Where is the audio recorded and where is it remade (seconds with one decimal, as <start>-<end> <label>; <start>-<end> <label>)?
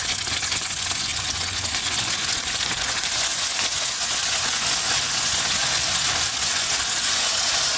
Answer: 0.0-7.8 remade